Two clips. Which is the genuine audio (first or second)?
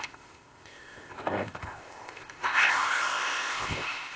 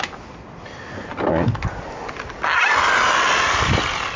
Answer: second